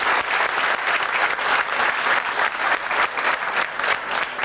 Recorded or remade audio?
recorded